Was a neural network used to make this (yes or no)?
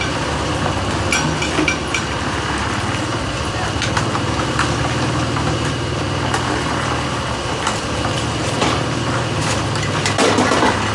no